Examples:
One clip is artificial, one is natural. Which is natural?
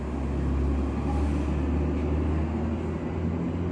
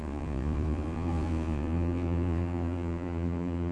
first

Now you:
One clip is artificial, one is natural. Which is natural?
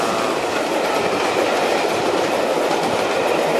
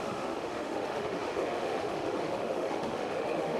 first